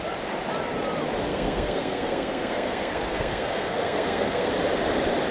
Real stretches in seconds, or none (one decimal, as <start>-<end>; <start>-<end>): 0.0-1.3; 4.5-5.3